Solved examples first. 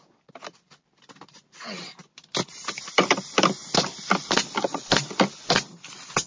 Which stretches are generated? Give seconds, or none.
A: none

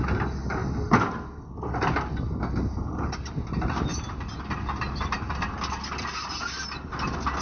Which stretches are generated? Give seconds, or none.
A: none

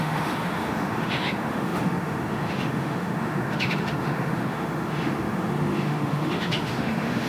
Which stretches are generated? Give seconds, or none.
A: 0.0-7.3 (autoencoder, DAC-VAE)

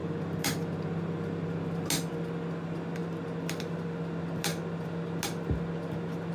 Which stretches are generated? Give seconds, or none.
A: none